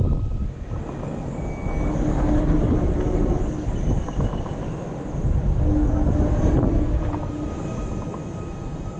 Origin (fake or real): real